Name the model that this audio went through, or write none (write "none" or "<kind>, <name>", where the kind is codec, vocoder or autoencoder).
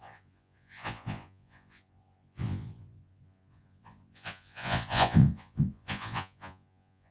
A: vocoder, Vocos